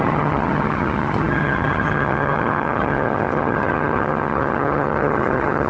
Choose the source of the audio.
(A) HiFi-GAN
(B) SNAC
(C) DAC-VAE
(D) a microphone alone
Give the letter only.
A